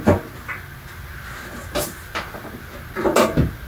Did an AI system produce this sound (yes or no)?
no